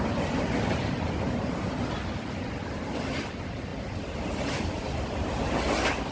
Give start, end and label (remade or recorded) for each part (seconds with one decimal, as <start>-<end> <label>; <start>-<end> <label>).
0.0-6.1 recorded